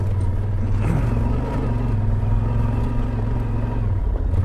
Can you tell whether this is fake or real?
real